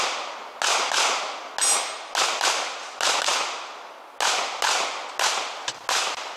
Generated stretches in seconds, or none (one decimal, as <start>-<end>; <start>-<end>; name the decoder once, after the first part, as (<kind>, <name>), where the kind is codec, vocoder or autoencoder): 3.3-3.8 (vocoder, BigVGAN v2)